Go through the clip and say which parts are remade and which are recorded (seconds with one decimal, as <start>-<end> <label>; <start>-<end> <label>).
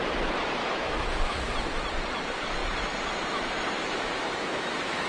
0.0-0.6 recorded; 0.6-1.5 remade; 1.5-3.8 recorded; 3.8-5.1 remade